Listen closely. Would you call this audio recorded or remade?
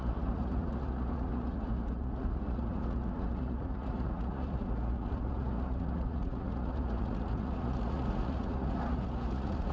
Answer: remade